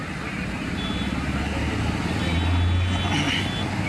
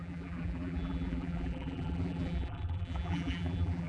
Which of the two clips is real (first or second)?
first